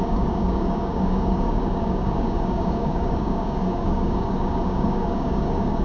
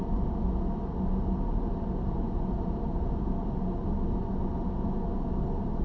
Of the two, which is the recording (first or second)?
second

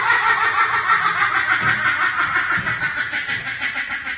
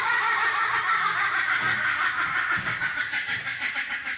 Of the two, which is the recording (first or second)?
first